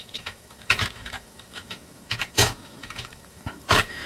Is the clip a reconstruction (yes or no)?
yes